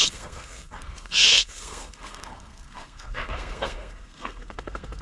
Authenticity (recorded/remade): remade